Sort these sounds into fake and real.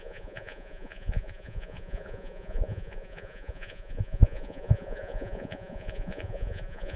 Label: fake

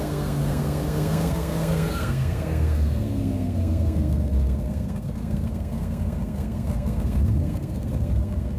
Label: fake